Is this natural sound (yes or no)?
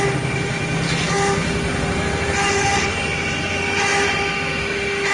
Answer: yes